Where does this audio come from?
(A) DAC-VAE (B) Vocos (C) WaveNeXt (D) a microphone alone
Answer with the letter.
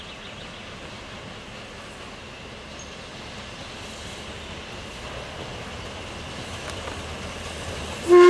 D